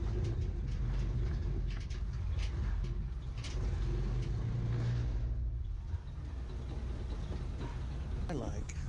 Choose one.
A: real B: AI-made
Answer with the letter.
A